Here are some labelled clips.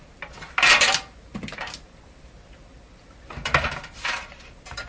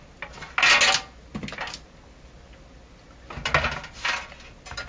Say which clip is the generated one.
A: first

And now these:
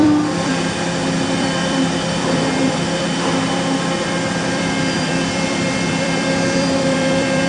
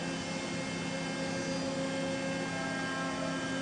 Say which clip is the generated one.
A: first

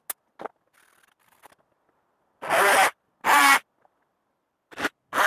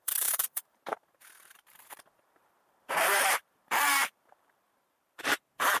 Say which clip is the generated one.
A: second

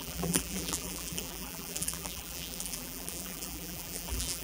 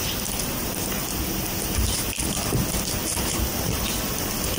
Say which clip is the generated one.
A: first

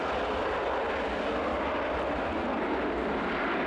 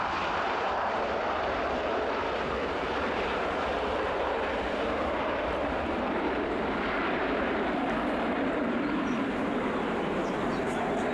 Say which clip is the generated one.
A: second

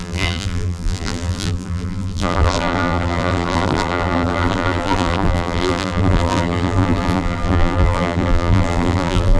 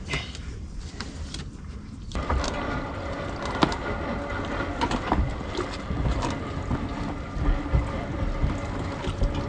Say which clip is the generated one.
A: first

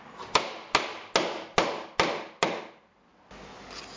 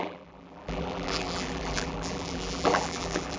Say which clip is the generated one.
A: second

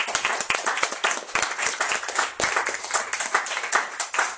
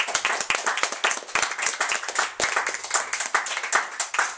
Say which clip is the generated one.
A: first